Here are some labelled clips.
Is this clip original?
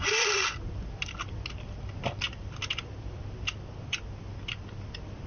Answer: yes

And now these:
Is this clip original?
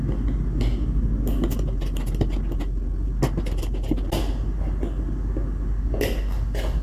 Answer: yes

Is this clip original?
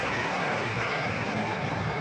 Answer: no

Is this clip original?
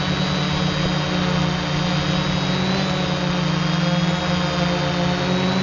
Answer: yes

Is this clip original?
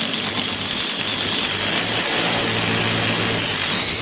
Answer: yes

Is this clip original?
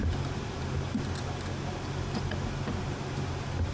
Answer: yes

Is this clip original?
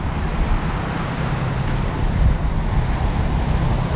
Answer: yes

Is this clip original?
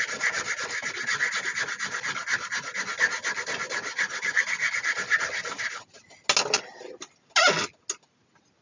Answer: yes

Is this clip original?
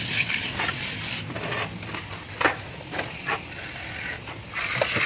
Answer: yes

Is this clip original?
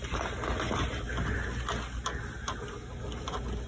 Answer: yes